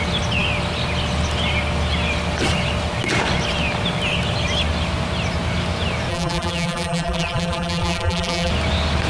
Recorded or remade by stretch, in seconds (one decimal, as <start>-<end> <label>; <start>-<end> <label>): 0.0-6.1 recorded; 6.1-8.5 remade; 8.5-9.1 recorded